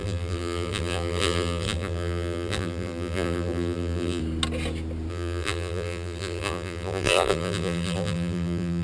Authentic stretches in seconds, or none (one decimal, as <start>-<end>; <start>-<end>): 4.2-5.1